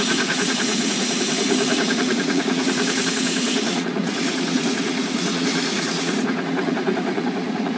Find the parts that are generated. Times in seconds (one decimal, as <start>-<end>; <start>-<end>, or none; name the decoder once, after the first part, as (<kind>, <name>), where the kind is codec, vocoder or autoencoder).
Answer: 0.0-7.8 (vocoder, Vocos)